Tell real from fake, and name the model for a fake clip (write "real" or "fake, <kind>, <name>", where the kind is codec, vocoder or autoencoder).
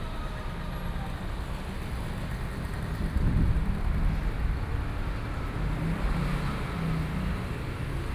real